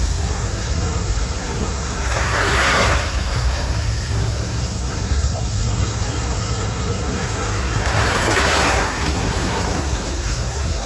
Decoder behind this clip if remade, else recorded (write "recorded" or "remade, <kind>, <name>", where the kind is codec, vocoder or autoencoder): remade, codec, SNAC